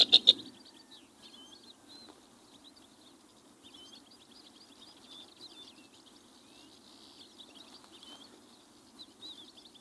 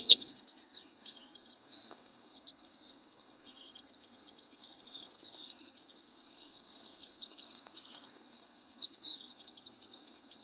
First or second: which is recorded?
first